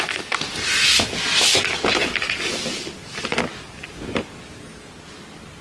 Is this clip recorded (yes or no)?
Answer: yes